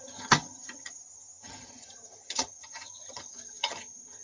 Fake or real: fake